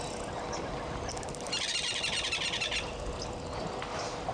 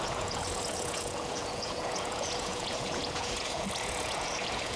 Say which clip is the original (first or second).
first